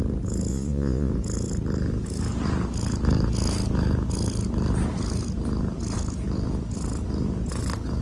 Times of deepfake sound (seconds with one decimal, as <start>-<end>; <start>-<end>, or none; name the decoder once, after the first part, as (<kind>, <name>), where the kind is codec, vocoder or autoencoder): 0.5-1.1 (vocoder, Vocos)